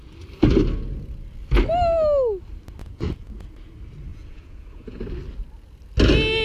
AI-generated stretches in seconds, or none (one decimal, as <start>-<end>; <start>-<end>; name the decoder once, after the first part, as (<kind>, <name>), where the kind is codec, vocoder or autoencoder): 2.8-3.3 (vocoder, Vocos); 4.1-5.0